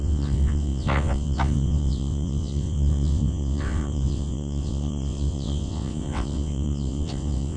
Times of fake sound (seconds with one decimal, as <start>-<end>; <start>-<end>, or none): 0.0-7.6